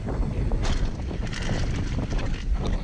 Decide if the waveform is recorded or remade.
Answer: recorded